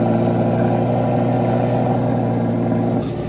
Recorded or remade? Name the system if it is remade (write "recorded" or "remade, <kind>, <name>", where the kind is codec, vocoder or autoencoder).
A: recorded